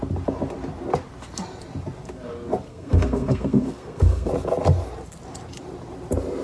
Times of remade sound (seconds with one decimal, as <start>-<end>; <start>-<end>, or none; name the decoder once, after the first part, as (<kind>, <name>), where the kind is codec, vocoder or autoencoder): 2.7-4.3 (codec, SNAC)